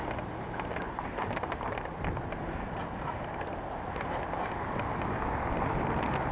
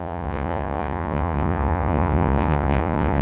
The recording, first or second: first